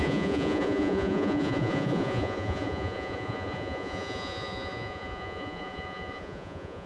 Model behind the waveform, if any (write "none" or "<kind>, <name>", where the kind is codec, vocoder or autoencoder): vocoder, Vocos